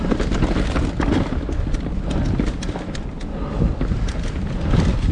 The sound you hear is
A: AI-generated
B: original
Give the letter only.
B